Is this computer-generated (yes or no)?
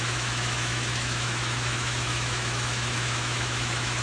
yes